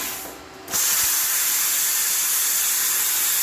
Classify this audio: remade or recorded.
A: recorded